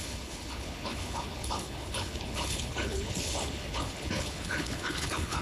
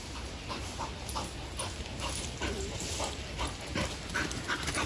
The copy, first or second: first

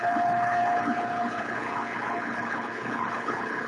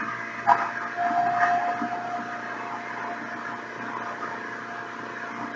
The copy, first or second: first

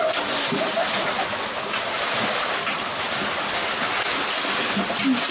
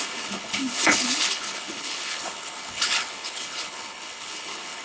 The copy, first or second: second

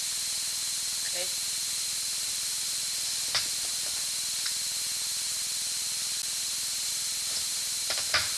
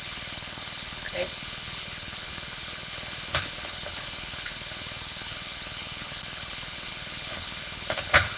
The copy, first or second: second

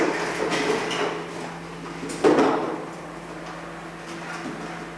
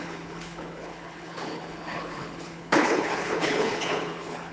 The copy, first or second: second